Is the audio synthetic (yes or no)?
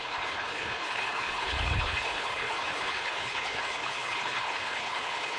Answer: yes